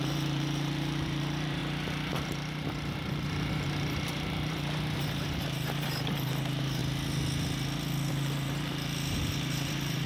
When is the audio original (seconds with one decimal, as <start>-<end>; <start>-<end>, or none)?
1.6-2.1; 6.8-8.1